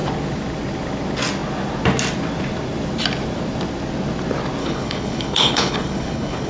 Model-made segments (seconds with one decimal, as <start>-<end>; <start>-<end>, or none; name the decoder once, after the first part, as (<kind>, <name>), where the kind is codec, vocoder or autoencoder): 4.6-6.5 (codec, HILCodec)